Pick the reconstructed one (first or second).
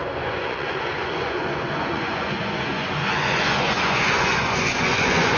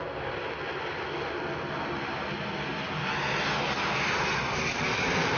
first